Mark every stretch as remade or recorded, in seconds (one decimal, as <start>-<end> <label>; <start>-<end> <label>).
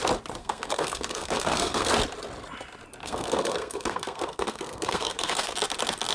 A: 0.0-0.4 recorded; 0.4-1.9 remade; 1.9-3.0 recorded; 3.0-5.5 remade; 5.5-6.1 recorded